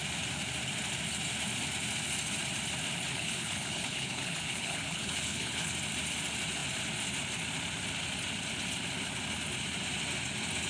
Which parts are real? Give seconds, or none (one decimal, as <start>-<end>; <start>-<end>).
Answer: 0.0-3.1; 5.7-10.7